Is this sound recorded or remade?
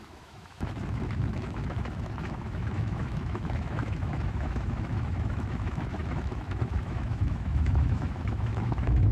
remade